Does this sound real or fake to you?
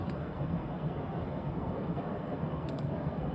fake